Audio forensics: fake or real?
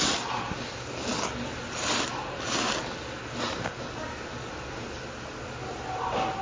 real